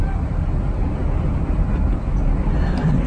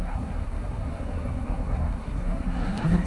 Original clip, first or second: first